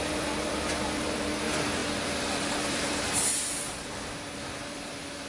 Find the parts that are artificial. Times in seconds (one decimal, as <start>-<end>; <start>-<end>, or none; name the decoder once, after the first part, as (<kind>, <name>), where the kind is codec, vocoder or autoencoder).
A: 0.0-1.8 (vocoder, BigVGAN v2); 2.5-5.3